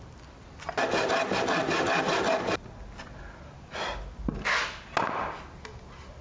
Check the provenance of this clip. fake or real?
real